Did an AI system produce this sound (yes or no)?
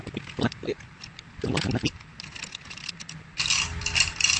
no